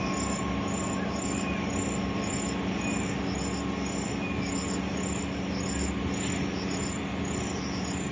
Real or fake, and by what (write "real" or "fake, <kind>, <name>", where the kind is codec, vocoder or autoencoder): real